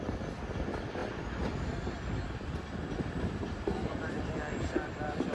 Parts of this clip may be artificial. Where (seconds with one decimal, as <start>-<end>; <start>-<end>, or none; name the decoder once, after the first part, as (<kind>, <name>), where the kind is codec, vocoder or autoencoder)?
1.0-4.1 (vocoder, BigVGAN v2)